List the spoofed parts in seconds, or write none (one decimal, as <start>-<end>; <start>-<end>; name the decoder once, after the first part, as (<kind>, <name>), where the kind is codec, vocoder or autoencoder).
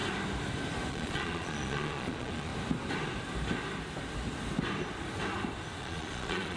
0.9-2.5 (vocoder, Vocos); 5.8-6.6